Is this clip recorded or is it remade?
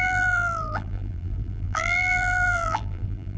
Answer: remade